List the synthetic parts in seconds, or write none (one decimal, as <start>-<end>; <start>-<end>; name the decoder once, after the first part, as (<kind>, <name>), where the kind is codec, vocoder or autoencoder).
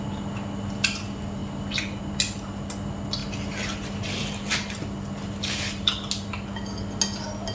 none